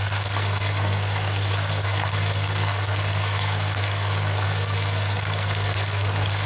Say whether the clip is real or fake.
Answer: fake